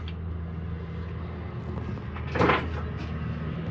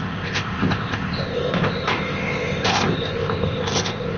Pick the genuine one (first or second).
first